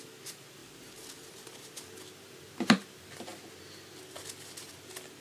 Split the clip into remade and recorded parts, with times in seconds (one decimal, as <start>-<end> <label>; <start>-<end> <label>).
0.0-0.6 recorded; 0.6-1.3 remade; 1.3-5.2 recorded